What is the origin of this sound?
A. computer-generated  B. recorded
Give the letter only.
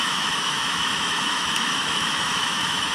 A